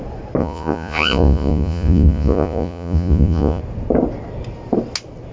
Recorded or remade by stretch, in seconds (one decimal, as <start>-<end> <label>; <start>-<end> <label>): 0.0-0.4 recorded; 0.4-3.6 remade; 3.6-5.3 recorded

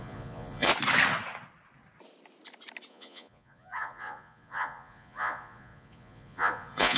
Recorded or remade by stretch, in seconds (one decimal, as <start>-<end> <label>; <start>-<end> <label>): 0.0-0.7 remade; 0.7-2.9 recorded; 2.9-7.0 remade

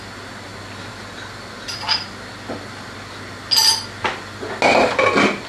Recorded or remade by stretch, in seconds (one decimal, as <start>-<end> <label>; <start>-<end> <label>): 0.0-5.5 recorded

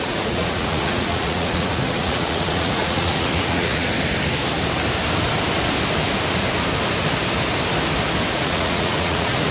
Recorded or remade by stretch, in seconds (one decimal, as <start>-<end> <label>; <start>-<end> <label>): 0.0-3.9 remade; 3.9-8.3 recorded; 8.3-9.5 remade